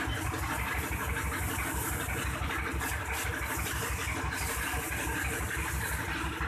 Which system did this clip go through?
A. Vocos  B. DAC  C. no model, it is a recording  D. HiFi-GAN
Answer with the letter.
C